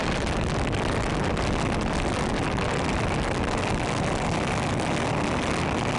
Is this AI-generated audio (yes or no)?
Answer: no